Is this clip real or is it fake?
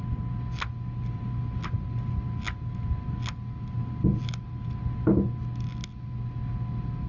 real